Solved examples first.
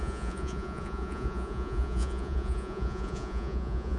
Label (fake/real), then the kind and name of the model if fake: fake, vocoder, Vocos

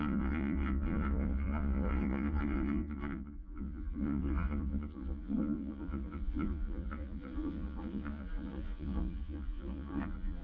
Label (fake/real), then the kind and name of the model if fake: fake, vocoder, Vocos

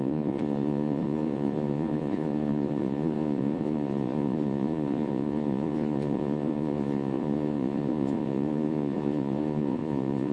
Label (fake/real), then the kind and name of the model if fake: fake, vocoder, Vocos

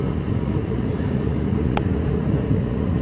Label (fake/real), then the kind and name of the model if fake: fake, vocoder, Vocos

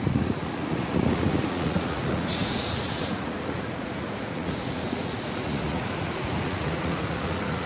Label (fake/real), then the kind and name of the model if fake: fake, vocoder, Vocos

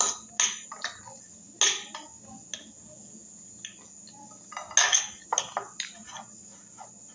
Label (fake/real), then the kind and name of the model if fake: real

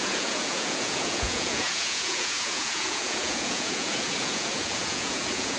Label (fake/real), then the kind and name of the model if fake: fake, vocoder, Vocos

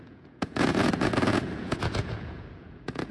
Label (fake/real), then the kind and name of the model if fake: fake, vocoder, Vocos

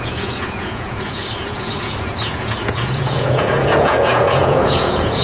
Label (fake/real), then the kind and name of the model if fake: fake, vocoder, Vocos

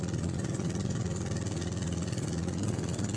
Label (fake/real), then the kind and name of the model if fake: fake, vocoder, Vocos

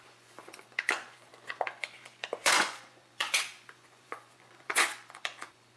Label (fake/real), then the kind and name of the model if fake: fake, vocoder, Vocos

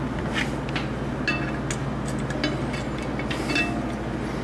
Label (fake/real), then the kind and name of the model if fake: real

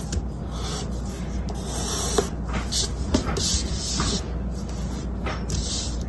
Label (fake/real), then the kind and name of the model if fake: real